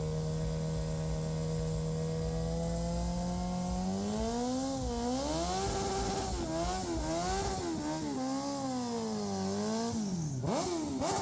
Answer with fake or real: real